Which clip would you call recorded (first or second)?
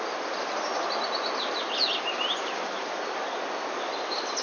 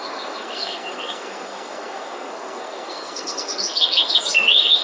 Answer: first